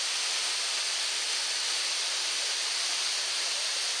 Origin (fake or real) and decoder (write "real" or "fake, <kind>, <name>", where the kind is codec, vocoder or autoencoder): real